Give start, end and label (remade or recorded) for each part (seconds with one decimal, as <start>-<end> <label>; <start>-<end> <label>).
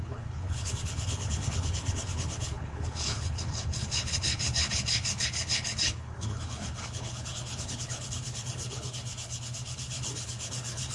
0.0-10.9 remade